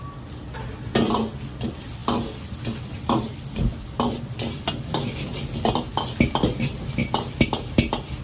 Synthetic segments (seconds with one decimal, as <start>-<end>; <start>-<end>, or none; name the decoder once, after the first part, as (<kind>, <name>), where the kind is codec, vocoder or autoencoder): none